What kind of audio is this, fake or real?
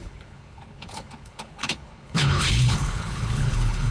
fake